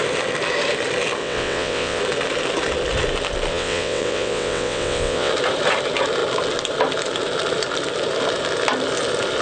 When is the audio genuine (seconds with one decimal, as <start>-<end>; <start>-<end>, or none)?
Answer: 0.0-1.2; 2.0-3.5; 5.3-9.4

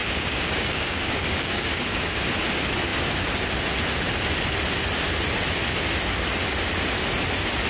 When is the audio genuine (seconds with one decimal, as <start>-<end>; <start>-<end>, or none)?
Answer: 2.3-7.7

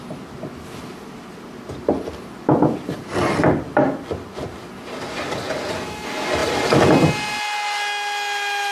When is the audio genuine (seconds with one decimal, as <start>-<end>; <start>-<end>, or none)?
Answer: 0.0-8.7

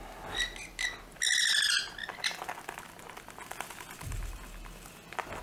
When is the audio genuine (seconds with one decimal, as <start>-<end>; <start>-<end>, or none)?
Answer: 0.0-5.4

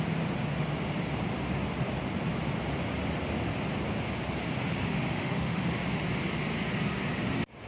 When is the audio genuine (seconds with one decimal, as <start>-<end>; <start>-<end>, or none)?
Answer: 0.0-4.9; 5.6-7.7

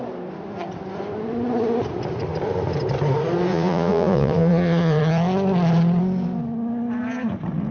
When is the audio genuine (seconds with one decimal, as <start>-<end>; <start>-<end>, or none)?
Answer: 0.0-3.5; 5.0-7.7

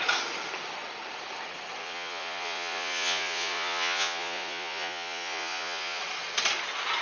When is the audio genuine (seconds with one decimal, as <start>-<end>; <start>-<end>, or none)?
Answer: 0.0-1.8; 6.0-7.0